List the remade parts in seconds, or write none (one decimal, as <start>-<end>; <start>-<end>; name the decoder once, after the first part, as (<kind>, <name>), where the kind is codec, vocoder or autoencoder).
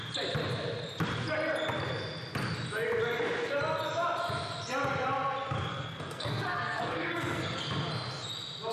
5.7-7.6 (codec, SNAC)